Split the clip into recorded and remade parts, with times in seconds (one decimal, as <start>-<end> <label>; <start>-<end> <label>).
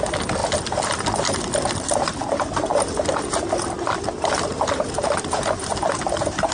0.0-6.5 recorded